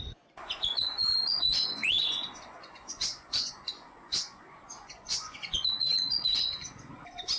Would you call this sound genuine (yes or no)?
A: no